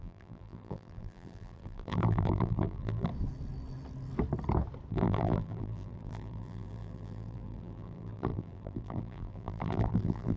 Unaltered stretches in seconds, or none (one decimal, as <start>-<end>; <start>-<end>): 3.1-4.9